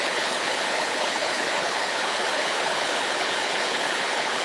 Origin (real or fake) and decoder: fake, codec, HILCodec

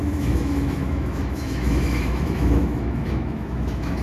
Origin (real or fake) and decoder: fake, autoencoder, DAC-VAE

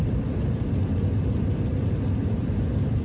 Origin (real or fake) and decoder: real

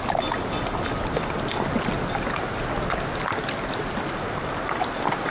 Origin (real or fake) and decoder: real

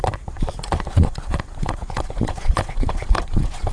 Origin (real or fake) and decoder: fake, vocoder, Vocos